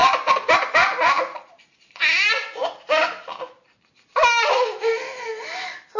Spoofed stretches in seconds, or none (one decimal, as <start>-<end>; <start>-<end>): none